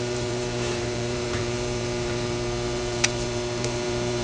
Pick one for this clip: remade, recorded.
remade